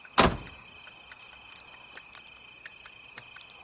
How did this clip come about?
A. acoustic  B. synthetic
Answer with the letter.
A